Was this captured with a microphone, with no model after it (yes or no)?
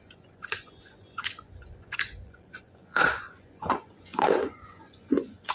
no